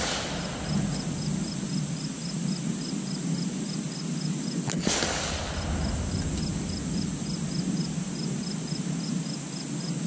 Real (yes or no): yes